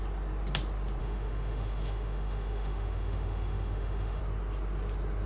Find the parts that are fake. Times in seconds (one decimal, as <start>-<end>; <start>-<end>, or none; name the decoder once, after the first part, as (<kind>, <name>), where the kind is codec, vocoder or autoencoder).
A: 1.0-4.2 (autoencoder, DAC-VAE)